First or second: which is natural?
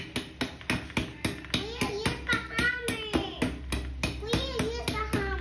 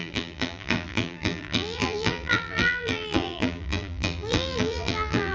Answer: first